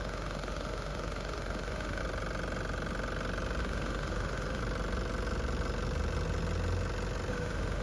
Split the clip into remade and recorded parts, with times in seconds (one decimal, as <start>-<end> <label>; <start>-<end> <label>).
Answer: 0.0-2.0 remade; 2.0-3.6 recorded; 3.6-4.6 remade; 4.6-7.3 recorded; 7.3-7.8 remade